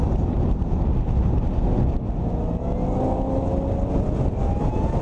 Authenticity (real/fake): real